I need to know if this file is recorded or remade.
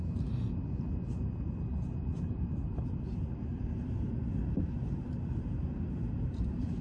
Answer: remade